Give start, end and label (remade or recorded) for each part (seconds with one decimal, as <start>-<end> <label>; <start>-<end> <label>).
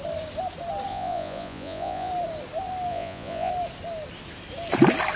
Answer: 0.0-0.9 recorded; 0.9-2.1 remade; 2.1-2.9 recorded; 2.9-3.5 remade; 3.5-5.2 recorded